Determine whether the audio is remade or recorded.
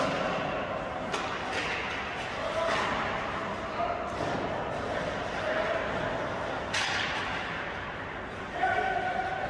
recorded